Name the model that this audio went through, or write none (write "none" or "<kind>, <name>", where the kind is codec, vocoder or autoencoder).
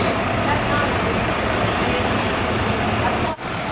none